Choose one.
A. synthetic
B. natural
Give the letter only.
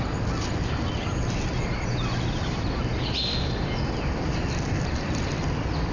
B